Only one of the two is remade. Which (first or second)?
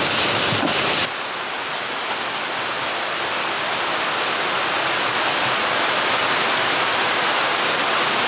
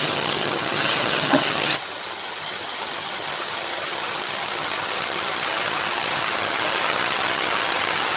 second